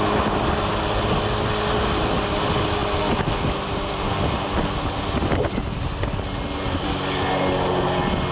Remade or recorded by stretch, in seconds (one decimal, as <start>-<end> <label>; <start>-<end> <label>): 0.0-8.3 recorded